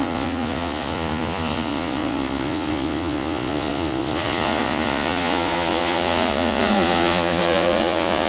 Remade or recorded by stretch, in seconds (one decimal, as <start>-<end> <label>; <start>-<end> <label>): 0.0-8.3 remade